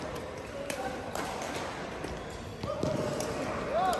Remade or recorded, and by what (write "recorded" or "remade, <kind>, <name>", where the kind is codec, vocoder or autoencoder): remade, vocoder, BigVGAN v2